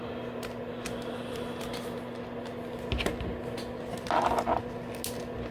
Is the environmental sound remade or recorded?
recorded